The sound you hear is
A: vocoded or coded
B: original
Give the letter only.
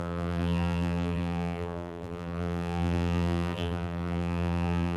A